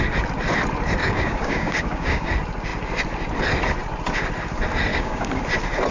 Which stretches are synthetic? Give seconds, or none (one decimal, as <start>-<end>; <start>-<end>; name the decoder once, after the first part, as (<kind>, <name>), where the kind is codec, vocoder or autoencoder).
1.0-2.3 (codec, DAC); 4.9-5.4